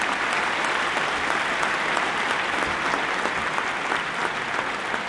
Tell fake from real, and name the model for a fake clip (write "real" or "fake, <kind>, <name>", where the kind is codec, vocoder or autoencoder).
real